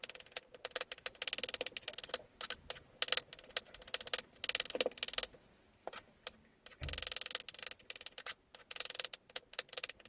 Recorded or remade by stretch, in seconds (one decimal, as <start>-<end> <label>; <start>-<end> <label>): 0.0-10.1 recorded